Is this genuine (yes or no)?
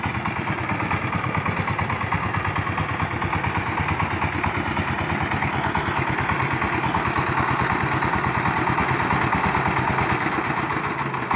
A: yes